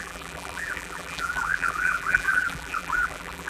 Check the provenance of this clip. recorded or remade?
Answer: remade